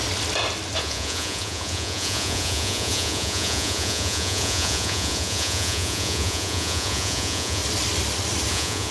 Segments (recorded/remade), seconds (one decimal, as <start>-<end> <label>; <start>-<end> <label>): 0.0-0.8 recorded; 0.8-7.6 remade; 7.6-8.5 recorded; 8.5-8.9 remade